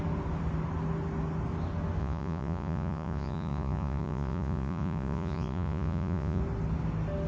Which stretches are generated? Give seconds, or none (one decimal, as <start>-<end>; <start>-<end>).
2.0-6.4

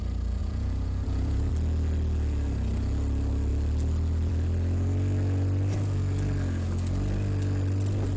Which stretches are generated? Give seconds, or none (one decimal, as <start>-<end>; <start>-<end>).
0.4-1.5

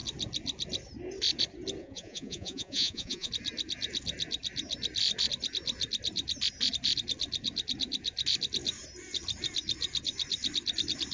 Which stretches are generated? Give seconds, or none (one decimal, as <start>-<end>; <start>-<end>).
1.8-3.3

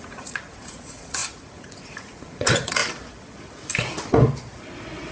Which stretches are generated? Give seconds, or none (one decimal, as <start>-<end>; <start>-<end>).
0.0-2.8

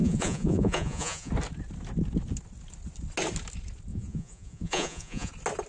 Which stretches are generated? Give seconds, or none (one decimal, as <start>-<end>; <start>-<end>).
0.0-1.3; 3.9-5.3